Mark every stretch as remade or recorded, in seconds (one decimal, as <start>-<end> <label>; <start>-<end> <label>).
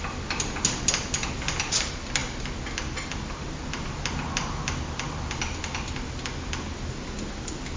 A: 0.0-7.8 recorded